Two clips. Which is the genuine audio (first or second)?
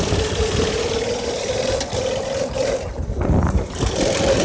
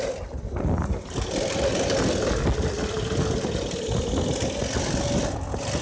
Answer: second